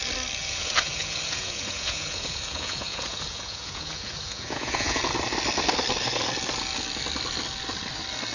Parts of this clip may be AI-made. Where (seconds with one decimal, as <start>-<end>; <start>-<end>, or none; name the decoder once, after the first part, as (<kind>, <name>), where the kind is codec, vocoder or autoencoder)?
0.4-5.0 (vocoder, Vocos)